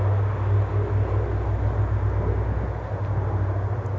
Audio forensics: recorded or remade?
recorded